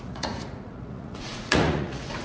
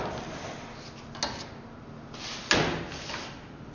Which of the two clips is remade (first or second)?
first